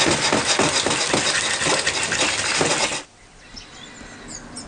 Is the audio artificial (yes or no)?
no